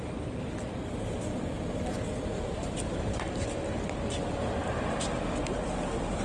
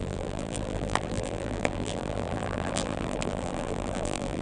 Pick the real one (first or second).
first